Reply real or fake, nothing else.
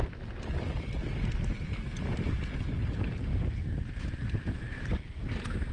real